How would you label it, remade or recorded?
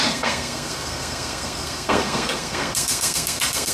remade